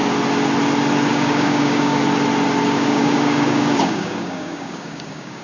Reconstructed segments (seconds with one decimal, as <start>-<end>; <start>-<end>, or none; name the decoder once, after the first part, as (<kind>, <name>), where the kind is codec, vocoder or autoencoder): 1.1-2.0 (codec, DAC); 2.6-5.4

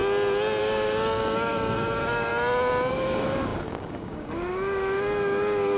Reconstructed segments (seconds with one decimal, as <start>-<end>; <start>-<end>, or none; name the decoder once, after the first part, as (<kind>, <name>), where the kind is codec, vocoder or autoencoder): 0.6-2.3 (codec, DAC); 2.9-5.8

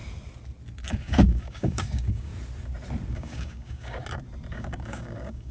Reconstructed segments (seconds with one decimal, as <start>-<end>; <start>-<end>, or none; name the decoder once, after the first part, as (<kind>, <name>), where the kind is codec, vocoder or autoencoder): 0.9-2.3 (codec, DAC); 3.1-4.0; 4.5-5.5

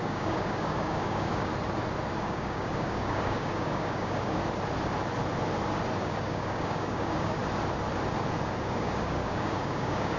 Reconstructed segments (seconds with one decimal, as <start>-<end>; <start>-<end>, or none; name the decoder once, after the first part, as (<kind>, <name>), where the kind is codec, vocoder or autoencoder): 0.0-1.5 (codec, DAC); 2.2-4.4; 6.0-7.4; 8.6-10.2